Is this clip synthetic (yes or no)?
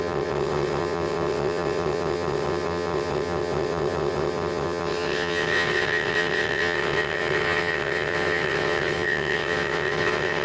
yes